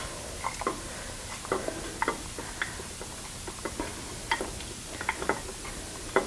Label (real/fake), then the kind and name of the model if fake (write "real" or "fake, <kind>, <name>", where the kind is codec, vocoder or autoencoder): real